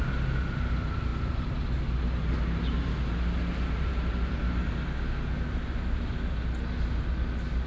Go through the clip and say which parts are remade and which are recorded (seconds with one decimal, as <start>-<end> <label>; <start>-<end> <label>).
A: 0.0-7.7 recorded